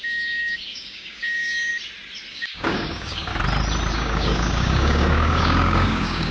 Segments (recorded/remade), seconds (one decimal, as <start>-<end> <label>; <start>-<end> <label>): 0.0-1.7 remade; 1.7-2.3 recorded; 2.3-3.3 remade; 3.3-3.9 recorded; 3.9-6.3 remade